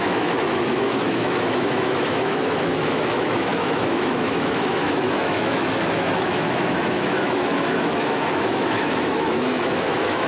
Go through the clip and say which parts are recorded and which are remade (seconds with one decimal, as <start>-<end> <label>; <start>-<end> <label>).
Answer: 0.0-10.3 remade